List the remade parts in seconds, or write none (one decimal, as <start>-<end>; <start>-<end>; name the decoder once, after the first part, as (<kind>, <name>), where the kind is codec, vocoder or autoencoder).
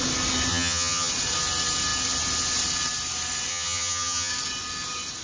0.5-1.1 (vocoder, HiFi-GAN); 3.5-4.3